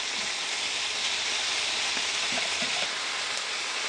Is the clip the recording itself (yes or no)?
yes